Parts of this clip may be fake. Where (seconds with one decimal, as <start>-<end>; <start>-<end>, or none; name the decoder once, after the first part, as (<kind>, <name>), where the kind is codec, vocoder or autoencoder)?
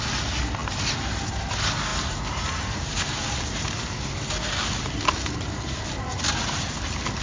1.9-3.9 (vocoder, BigVGAN v2)